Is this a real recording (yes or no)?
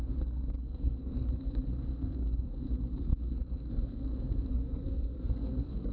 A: no